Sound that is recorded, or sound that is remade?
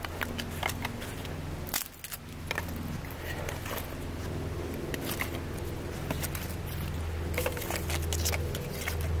recorded